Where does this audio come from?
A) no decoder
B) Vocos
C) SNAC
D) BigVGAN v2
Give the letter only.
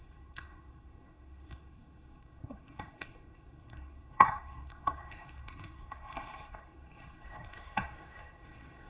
C